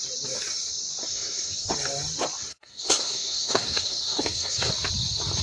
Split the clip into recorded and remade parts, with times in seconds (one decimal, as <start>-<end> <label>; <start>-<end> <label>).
0.0-1.1 recorded; 1.1-1.7 remade; 1.7-2.5 recorded; 2.5-4.7 remade; 4.7-5.4 recorded